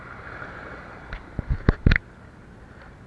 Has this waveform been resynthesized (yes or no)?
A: no